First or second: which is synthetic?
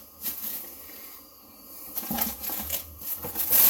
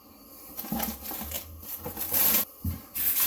first